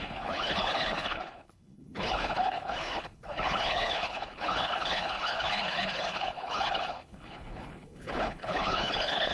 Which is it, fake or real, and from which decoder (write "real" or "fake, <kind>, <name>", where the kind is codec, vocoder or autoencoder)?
fake, codec, HILCodec